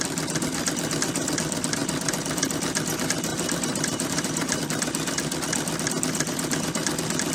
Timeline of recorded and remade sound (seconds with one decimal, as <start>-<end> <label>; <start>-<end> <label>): 0.0-3.3 recorded; 3.3-4.6 remade; 4.6-7.3 recorded